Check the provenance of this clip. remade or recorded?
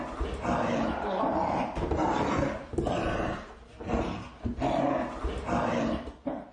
recorded